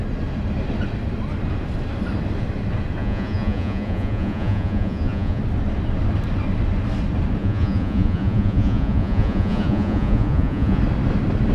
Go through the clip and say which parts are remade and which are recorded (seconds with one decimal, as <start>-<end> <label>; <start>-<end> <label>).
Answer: 0.0-3.0 recorded; 3.0-5.4 remade; 5.4-7.4 recorded; 7.4-10.8 remade; 10.8-11.5 recorded